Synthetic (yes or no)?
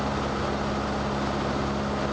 no